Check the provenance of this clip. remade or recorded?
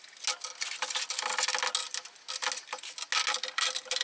recorded